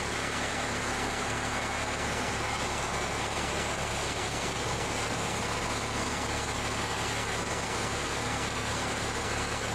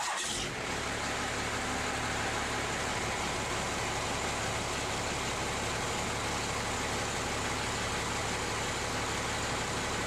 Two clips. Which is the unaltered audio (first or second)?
second